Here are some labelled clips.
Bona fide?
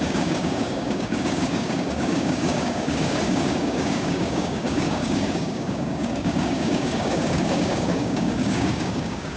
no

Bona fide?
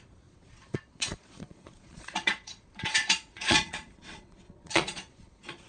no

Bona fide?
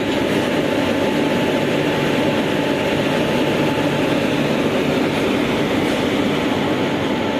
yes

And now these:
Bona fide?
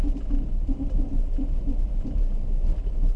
yes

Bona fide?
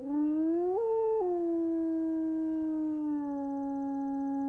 yes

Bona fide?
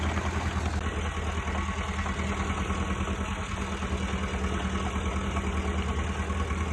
yes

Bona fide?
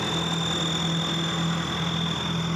yes